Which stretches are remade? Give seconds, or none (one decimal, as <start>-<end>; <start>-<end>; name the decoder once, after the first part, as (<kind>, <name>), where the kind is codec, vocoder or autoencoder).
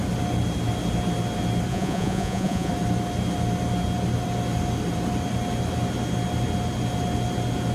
1.7-2.7 (vocoder, Vocos)